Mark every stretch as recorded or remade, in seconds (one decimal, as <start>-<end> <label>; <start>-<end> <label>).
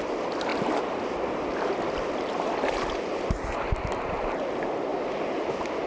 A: 0.0-5.9 recorded